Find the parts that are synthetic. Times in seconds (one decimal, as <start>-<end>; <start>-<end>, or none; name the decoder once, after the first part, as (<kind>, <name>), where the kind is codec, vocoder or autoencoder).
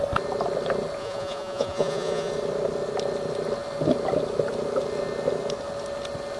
1.0-2.3 (vocoder, Vocos)